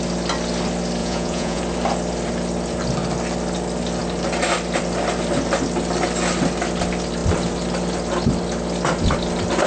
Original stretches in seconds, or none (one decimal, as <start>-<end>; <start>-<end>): 0.0-1.0; 1.6-9.7

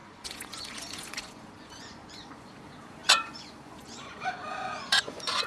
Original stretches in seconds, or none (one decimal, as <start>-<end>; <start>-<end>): none

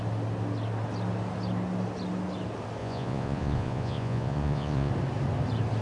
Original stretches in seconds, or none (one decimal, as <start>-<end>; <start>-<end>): 0.0-2.8; 4.9-5.8

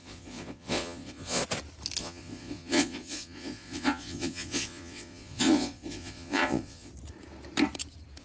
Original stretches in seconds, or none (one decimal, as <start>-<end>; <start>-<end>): 1.4-2.0; 6.9-8.2